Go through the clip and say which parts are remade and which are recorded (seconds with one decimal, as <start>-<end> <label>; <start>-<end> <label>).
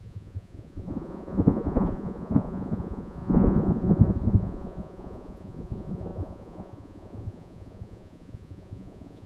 0.0-9.3 remade